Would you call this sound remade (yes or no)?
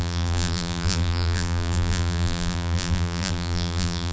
yes